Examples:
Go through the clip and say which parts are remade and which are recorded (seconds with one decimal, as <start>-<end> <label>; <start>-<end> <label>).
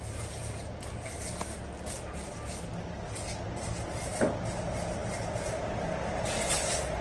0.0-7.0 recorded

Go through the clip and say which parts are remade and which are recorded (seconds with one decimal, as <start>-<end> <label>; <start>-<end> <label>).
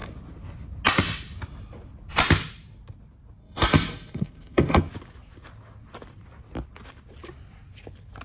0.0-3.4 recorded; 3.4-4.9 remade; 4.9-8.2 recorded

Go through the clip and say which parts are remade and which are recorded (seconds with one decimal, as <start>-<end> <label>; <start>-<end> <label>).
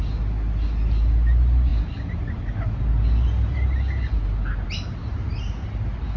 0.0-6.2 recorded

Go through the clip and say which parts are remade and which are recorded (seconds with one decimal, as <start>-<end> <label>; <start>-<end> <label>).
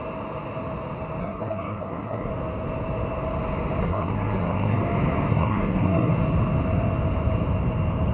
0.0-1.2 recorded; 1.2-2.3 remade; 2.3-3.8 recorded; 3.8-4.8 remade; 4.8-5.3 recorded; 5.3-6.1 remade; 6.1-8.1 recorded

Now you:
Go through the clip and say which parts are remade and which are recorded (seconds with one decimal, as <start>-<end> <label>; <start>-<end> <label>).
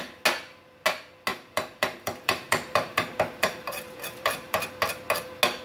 0.0-1.3 recorded; 1.3-4.7 remade; 4.7-5.6 recorded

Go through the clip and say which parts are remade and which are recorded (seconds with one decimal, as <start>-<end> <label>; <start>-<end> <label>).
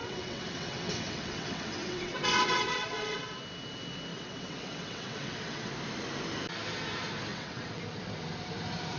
0.0-3.3 remade; 3.3-4.1 recorded; 4.1-5.7 remade; 5.7-7.3 recorded; 7.3-7.8 remade; 7.8-9.0 recorded